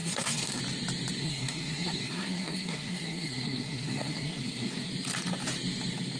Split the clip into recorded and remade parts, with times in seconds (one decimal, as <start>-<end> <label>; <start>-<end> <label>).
0.0-0.6 remade; 0.6-1.2 recorded; 1.2-4.9 remade; 4.9-6.2 recorded